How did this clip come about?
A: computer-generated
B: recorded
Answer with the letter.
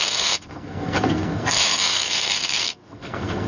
A